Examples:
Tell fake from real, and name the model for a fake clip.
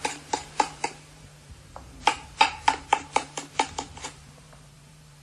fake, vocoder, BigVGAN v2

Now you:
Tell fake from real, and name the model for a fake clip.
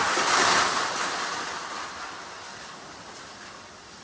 real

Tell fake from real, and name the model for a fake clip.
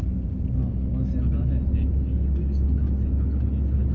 real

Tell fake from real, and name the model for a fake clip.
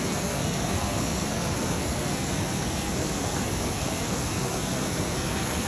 fake, codec, SNAC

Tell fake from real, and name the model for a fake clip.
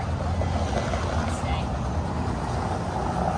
real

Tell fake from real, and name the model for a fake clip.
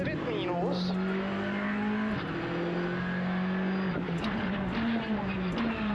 real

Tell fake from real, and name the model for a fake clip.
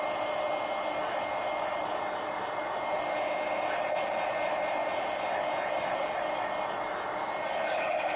real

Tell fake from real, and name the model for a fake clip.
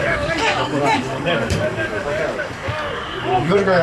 fake, codec, DAC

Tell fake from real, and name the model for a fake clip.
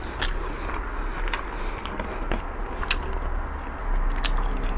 real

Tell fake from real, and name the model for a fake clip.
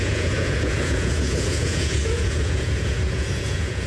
fake, vocoder, Vocos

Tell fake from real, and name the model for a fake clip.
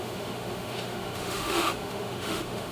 fake, autoencoder, DAC-VAE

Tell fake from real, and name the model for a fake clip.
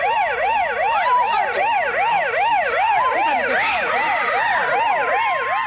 real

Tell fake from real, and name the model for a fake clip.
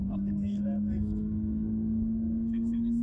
fake, codec, SNAC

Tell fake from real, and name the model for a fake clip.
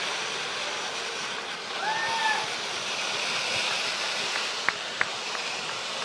real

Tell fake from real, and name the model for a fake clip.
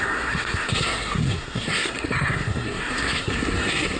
fake, codec, SNAC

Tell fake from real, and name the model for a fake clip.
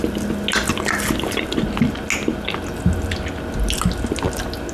real